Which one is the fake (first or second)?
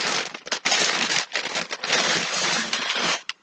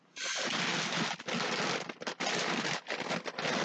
first